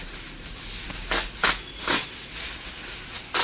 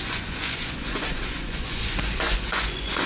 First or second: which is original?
first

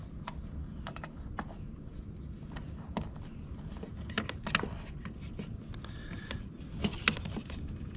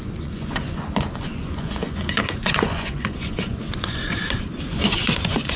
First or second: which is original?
first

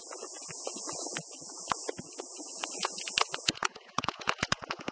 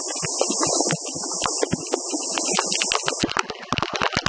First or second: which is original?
second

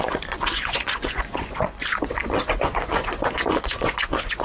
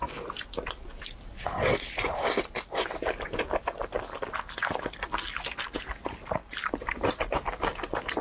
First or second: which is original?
second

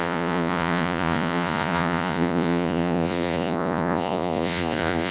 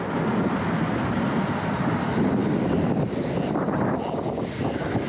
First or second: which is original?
second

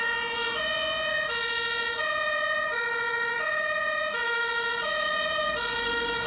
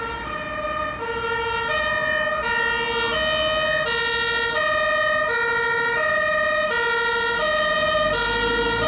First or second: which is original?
second